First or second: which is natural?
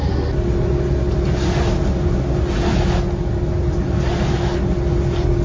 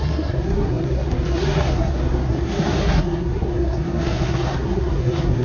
first